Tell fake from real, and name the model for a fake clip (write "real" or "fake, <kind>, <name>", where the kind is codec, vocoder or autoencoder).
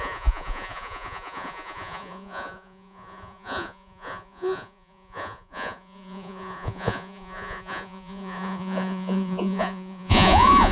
fake, vocoder, Vocos